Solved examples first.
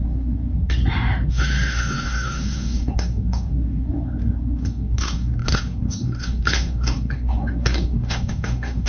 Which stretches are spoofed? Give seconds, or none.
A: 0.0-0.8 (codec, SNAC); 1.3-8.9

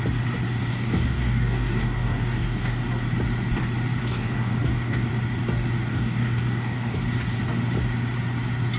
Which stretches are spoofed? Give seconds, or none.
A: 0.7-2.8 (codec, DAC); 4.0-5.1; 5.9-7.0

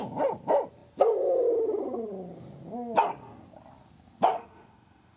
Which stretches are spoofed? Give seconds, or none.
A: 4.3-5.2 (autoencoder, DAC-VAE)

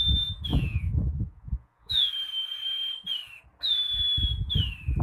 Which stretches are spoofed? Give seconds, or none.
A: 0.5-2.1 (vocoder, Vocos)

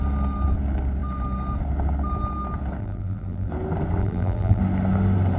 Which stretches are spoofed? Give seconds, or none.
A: 2.8-3.5 (vocoder, BigVGAN v2); 4.0-4.6

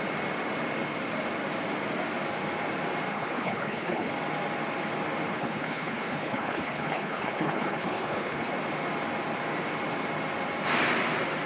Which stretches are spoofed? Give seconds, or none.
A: 3.1-4.1 (codec, HILCodec); 5.3-8.5

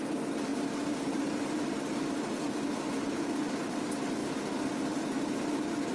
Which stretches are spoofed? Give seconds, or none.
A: 0.5-2.1 (vocoder, BigVGAN v2); 4.2-5.2

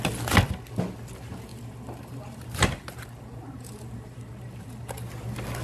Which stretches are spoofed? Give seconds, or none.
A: 1.5-4.9 (vocoder, BigVGAN v2)